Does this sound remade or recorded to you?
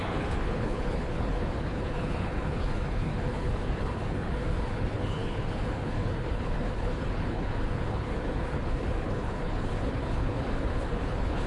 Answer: remade